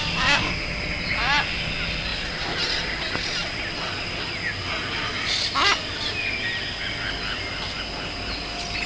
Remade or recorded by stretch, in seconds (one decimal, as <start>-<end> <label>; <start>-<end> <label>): 0.0-8.9 recorded